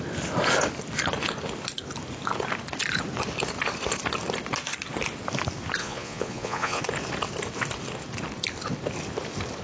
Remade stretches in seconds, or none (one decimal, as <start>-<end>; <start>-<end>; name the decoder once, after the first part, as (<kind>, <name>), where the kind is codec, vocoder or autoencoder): 5.8-6.8 (vocoder, Vocos)

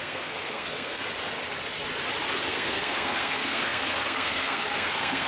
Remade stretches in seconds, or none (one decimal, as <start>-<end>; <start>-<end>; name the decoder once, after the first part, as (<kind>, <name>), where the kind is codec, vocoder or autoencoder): 0.0-1.0 (codec, SNAC); 2.5-5.3

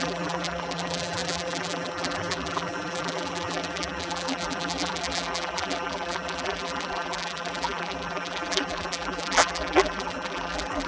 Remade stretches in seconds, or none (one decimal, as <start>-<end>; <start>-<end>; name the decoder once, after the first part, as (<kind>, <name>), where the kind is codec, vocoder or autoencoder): 0.0-10.9 (vocoder, BigVGAN v2)

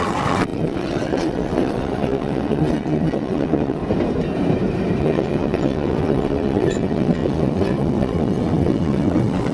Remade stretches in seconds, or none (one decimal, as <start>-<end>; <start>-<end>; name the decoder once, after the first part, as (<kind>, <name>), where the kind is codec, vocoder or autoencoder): 0.0-3.8 (vocoder, WaveNeXt); 5.0-9.5